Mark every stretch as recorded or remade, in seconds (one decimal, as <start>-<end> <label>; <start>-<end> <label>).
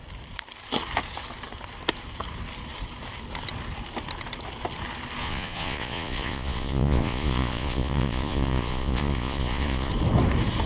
0.0-5.2 recorded; 5.2-9.9 remade; 9.9-10.7 recorded